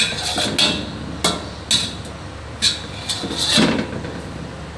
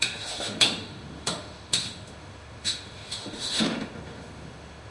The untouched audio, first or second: first